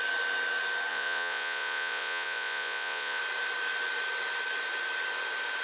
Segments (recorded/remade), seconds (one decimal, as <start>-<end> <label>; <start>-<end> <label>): 0.0-0.9 recorded; 0.9-3.2 remade; 3.2-5.6 recorded